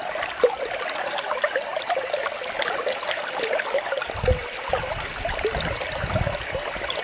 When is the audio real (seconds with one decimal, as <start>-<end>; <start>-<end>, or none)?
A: 0.0-7.0